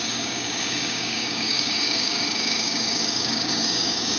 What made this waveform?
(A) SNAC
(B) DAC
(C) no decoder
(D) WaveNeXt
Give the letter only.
B